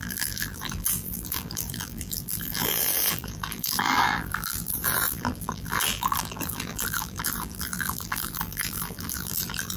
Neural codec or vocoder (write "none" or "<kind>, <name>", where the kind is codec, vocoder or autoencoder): vocoder, BigVGAN v2